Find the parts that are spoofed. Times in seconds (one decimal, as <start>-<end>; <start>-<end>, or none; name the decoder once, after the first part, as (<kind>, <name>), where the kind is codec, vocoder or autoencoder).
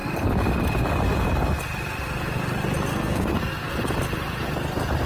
2.9-3.7 (codec, SNAC)